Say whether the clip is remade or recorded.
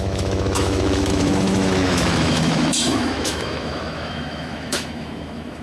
remade